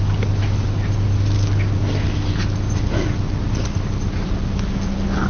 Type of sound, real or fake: real